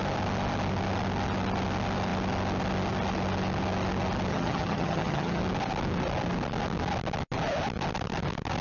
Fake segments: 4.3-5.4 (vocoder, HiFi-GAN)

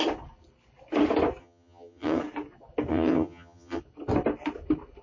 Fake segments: 1.4-2.2 (vocoder, HiFi-GAN); 2.9-3.8